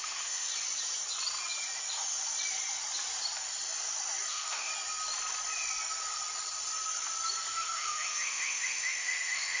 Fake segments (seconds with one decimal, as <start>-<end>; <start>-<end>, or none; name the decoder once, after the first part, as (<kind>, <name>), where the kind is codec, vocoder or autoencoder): 0.0-0.5 (autoencoder, DAC-VAE); 4.3-4.7; 7.5-9.6